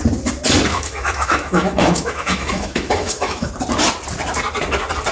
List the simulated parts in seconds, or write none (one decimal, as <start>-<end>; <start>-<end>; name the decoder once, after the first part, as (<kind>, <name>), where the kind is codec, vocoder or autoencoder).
0.7-3.5 (autoencoder, DAC-VAE)